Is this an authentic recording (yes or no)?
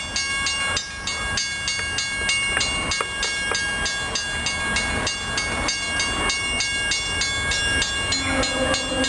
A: yes